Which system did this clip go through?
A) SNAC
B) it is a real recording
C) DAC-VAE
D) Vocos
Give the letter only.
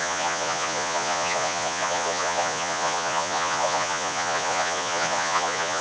D